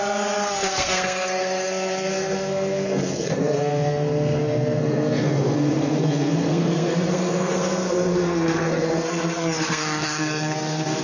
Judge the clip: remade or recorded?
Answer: remade